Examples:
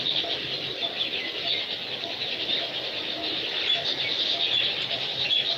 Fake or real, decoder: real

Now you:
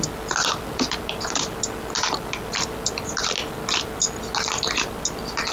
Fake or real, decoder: real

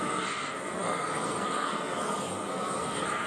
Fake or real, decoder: fake, codec, SNAC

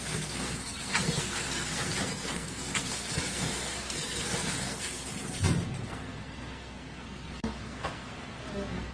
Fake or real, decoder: fake, codec, SNAC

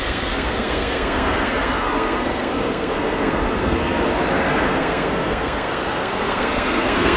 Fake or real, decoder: fake, codec, SNAC